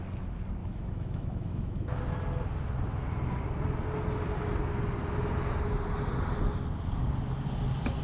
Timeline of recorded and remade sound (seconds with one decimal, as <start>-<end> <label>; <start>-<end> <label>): 0.0-0.6 recorded; 0.6-2.0 remade; 2.0-8.0 recorded